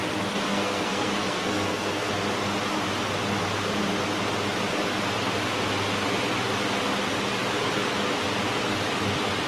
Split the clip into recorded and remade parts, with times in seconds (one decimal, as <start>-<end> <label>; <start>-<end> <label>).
0.0-0.5 recorded; 0.5-2.1 remade; 2.1-9.5 recorded